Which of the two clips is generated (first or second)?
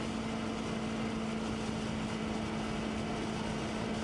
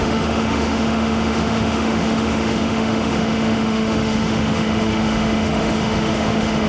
second